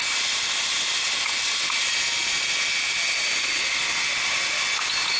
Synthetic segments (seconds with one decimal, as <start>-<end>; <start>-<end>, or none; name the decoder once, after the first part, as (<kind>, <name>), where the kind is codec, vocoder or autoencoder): none